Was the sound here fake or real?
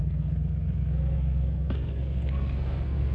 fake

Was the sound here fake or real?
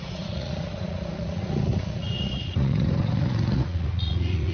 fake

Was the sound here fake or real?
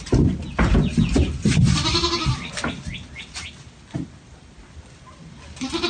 real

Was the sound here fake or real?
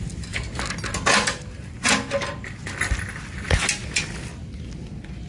real